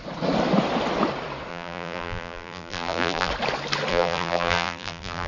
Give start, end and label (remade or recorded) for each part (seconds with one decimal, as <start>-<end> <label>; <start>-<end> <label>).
0.0-1.5 recorded; 1.5-3.3 remade; 3.3-3.9 recorded; 3.9-5.3 remade